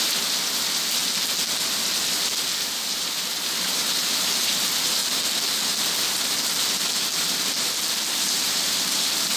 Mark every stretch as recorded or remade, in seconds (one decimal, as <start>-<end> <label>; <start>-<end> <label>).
0.0-1.0 remade; 1.0-2.1 recorded; 2.1-5.0 remade; 5.0-8.1 recorded; 8.1-9.4 remade

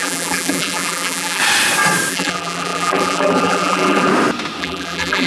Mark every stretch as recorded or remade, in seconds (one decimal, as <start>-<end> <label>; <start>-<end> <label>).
0.0-1.4 remade; 1.4-2.1 recorded; 2.1-4.1 remade; 4.1-4.6 recorded; 4.6-5.3 remade

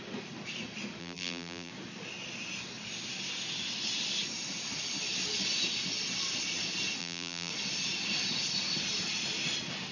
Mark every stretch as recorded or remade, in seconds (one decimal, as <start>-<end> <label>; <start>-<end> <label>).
0.0-1.0 recorded; 1.0-1.7 remade; 1.7-7.0 recorded; 7.0-7.5 remade; 7.5-9.9 recorded

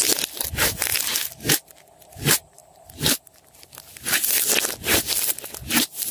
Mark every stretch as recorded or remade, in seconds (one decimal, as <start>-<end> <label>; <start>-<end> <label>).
0.0-6.1 recorded

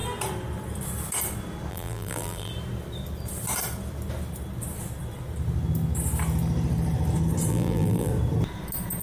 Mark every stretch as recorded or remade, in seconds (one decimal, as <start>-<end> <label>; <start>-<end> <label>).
0.0-1.7 recorded; 1.7-2.5 remade; 2.5-7.5 recorded; 7.5-8.1 remade; 8.1-9.0 recorded